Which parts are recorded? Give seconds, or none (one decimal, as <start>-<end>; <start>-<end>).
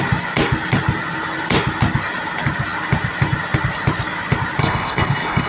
0.0-4.6